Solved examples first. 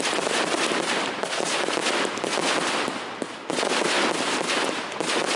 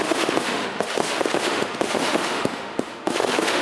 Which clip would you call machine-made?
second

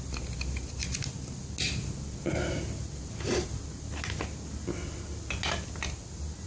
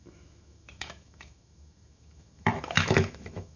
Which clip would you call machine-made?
second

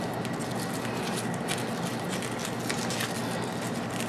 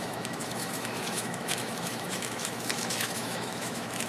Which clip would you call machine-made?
second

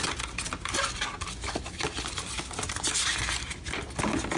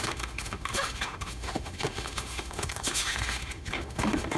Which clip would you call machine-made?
second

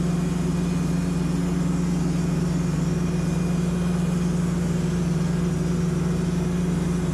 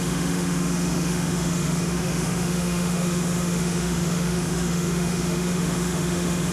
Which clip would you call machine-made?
second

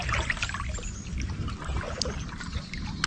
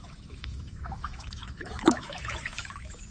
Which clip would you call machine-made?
second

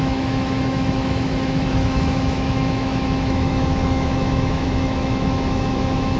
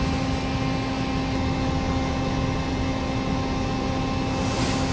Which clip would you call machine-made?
first